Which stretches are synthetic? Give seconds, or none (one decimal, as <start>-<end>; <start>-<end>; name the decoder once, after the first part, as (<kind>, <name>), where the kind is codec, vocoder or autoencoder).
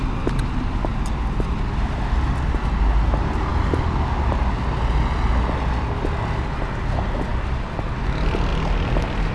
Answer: none